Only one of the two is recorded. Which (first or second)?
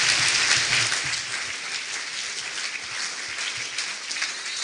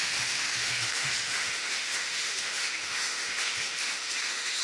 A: first